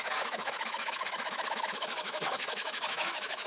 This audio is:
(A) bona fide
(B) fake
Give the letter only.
B